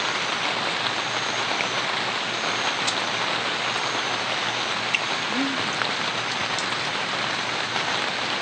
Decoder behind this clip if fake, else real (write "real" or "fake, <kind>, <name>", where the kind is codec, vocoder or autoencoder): real